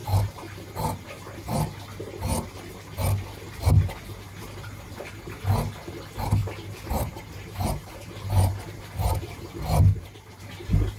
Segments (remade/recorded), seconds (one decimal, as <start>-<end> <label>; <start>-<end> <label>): 0.0-6.4 recorded; 6.4-9.5 remade; 9.5-9.9 recorded; 9.9-10.4 remade; 10.4-11.0 recorded